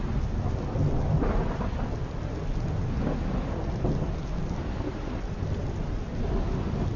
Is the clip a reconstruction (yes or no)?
no